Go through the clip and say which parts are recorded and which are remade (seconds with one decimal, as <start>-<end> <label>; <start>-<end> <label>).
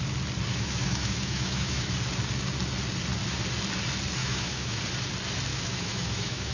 0.0-0.5 recorded; 0.5-1.9 remade; 1.9-4.2 recorded; 4.2-4.8 remade; 4.8-5.5 recorded; 5.5-6.5 remade